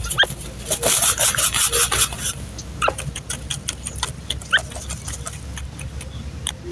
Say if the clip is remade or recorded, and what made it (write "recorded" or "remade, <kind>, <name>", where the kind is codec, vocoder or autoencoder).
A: recorded